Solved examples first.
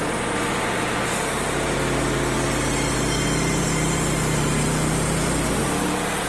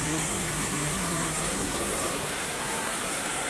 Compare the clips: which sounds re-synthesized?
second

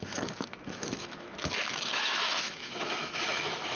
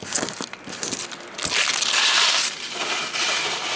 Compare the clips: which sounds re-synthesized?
first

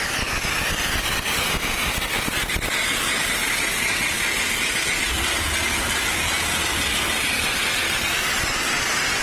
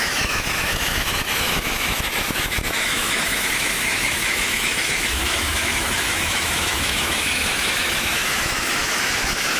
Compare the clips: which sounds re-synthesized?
second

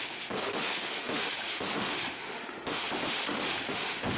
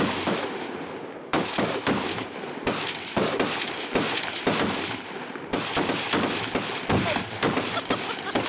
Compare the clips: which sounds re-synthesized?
first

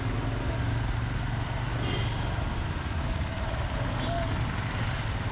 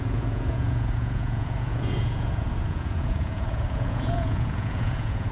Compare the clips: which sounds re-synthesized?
second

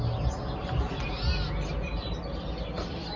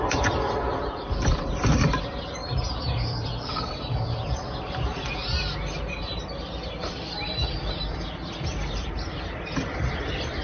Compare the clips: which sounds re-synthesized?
second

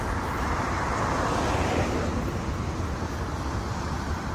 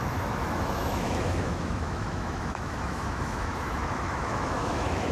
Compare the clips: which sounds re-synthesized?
second